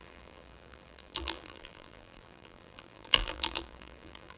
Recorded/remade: remade